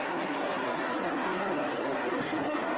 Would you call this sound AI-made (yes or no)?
yes